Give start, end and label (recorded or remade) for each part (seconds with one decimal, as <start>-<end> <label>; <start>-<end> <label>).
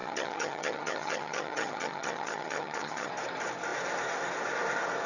0.0-3.1 remade; 3.1-5.1 recorded